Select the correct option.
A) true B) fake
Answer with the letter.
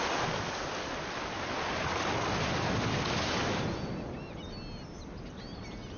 A